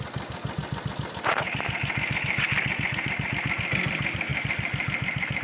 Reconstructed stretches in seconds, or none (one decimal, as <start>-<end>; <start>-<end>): none